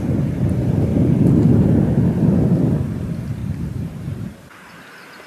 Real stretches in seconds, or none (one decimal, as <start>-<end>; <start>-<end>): 0.0-0.9; 1.7-3.4; 4.7-5.3

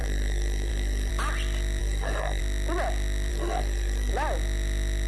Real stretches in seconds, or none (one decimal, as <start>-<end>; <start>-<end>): 1.1-1.8; 2.4-3.3; 4.1-5.1

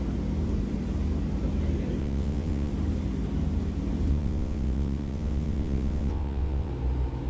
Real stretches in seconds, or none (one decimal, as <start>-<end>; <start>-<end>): 0.0-2.0; 2.7-4.1; 6.7-7.3